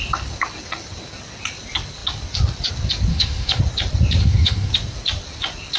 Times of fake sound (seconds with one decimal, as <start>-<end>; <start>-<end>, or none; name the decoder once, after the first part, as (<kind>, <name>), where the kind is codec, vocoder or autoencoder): 3.1-3.6 (autoencoder, DAC-VAE); 4.2-4.7